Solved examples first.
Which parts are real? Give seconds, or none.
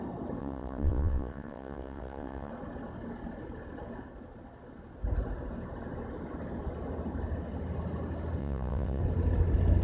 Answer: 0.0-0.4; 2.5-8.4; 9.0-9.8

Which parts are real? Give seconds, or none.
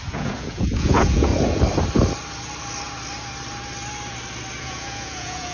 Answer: 1.3-4.6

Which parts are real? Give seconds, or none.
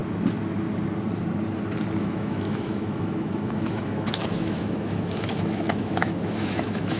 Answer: 0.0-2.0